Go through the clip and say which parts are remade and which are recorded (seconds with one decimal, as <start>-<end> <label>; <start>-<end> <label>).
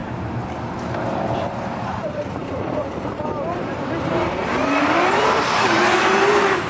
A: 0.0-6.7 remade